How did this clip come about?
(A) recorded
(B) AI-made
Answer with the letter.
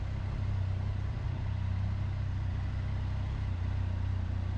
A